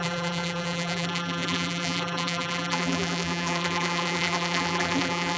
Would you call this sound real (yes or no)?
no